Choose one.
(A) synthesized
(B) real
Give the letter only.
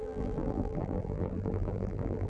A